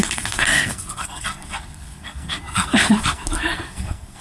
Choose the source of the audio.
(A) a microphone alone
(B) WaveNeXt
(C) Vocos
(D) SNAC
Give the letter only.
D